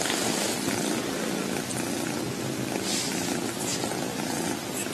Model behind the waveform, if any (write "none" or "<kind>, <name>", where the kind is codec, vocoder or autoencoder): none